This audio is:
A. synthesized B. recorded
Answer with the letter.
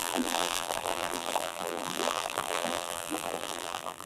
A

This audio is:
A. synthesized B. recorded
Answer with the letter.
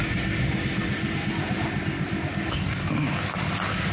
B